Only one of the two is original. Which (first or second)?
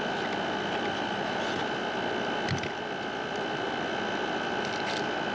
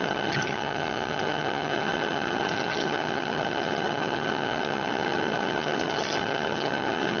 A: first